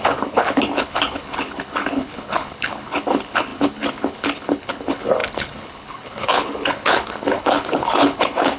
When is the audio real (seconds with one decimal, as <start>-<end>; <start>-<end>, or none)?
none